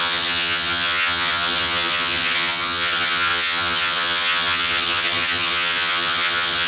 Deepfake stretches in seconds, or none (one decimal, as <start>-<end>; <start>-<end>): 0.0-6.7